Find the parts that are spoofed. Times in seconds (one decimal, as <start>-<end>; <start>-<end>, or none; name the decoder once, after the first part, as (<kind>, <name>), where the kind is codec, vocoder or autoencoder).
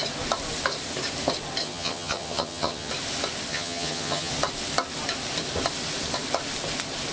1.6-2.9 (vocoder, HiFi-GAN); 3.5-4.3